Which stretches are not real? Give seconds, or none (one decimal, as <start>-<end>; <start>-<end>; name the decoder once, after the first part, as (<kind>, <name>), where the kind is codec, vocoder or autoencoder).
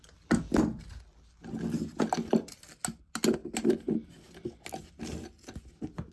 none